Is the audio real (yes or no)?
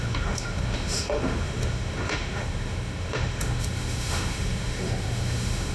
no